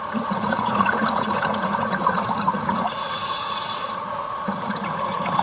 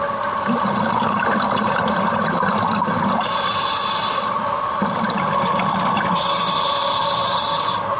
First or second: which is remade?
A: first